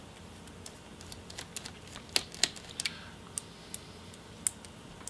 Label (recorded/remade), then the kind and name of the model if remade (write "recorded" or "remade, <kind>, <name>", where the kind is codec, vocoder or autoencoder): recorded